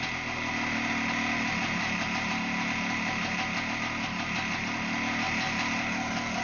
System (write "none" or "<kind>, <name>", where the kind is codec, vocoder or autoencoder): none